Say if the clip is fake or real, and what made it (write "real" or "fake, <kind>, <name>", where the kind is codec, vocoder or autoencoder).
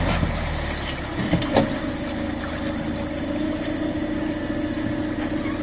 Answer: real